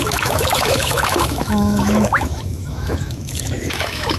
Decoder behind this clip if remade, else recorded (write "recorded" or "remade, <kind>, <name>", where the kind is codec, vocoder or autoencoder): remade, autoencoder, DAC-VAE